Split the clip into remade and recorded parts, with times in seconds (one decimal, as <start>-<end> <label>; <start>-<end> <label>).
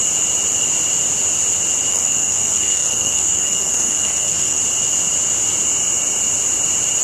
0.0-1.9 recorded; 1.9-4.6 remade; 4.6-7.0 recorded